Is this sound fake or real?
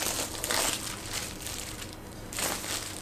fake